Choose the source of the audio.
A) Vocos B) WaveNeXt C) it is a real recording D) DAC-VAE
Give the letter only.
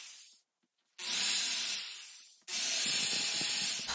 C